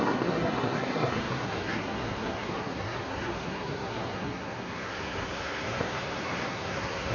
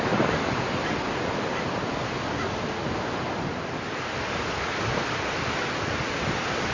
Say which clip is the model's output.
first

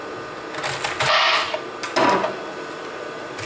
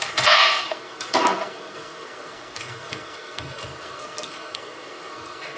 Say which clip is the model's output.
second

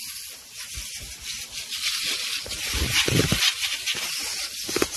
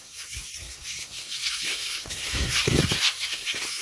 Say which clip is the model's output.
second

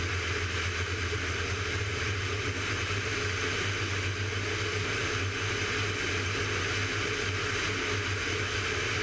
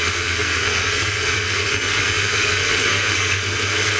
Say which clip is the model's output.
second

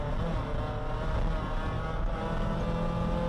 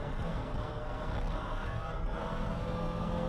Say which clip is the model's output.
second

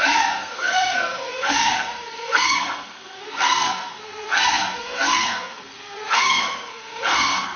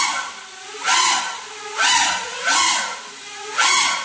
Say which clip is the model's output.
first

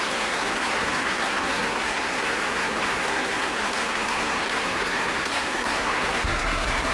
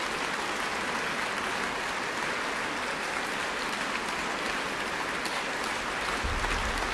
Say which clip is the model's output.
first